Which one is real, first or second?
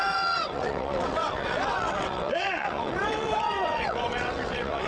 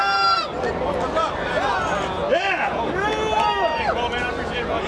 second